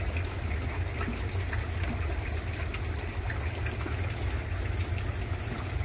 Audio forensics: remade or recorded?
recorded